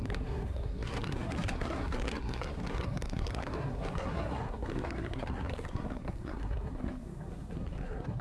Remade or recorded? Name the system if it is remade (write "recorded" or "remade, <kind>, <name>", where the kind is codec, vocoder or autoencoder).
remade, codec, SNAC